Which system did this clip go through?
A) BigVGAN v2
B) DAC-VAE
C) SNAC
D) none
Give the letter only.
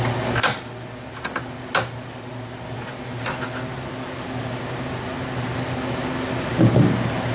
D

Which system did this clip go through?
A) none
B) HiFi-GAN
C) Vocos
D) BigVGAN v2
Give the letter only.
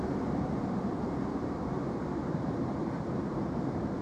D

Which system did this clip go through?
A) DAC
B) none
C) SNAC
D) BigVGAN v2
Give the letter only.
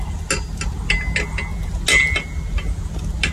B